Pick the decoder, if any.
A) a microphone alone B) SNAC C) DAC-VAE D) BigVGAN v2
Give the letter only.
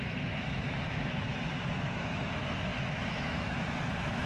C